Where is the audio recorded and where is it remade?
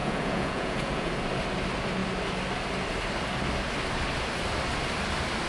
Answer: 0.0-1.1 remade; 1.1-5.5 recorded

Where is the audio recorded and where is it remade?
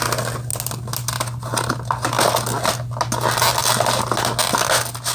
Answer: 0.0-5.1 recorded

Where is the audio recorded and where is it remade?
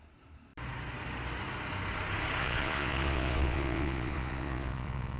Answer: 0.0-2.4 recorded; 2.4-5.2 remade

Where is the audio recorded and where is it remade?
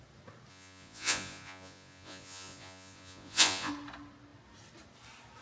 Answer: 0.0-0.5 recorded; 0.5-3.7 remade; 3.7-5.4 recorded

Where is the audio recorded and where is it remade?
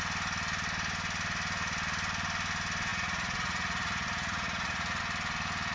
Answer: 0.0-2.9 recorded; 2.9-5.0 remade; 5.0-5.7 recorded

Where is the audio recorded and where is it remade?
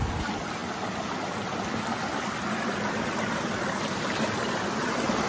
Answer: 0.0-5.3 recorded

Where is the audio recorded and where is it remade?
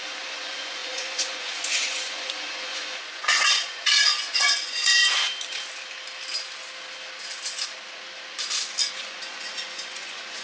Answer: 0.0-4.9 remade; 4.9-8.9 recorded; 8.9-10.4 remade